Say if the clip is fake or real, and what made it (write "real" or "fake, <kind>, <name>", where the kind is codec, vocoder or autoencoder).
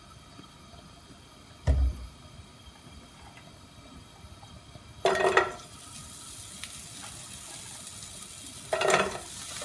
real